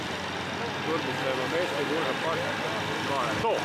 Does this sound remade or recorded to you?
recorded